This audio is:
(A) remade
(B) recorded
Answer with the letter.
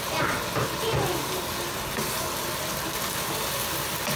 B